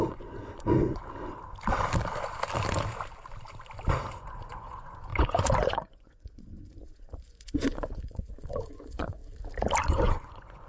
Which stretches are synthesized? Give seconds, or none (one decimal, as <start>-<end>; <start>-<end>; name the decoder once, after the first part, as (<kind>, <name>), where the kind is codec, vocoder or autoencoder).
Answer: 0.0-1.0 (vocoder, Vocos); 4.2-9.2; 9.9-10.7